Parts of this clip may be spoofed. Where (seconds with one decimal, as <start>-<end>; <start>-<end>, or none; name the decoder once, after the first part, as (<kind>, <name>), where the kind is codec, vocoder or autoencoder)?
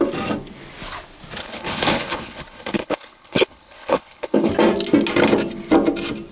1.4-4.5 (codec, HILCodec)